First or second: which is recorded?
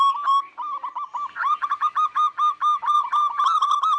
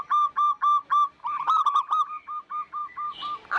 second